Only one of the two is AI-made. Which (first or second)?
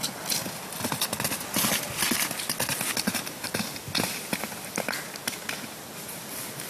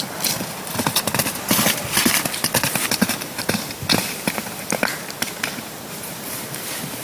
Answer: second